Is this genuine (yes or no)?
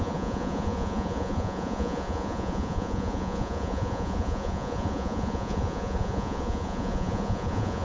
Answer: no